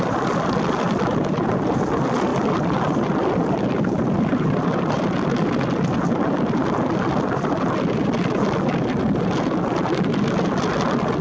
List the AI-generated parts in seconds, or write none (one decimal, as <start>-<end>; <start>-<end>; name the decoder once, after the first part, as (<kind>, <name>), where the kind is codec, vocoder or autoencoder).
none